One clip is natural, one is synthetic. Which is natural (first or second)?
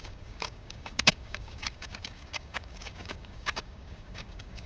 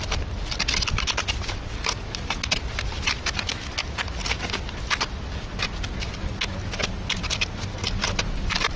second